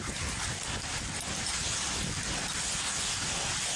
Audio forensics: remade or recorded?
recorded